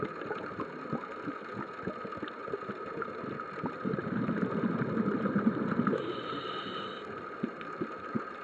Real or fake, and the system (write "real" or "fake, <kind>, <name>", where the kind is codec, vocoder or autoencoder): real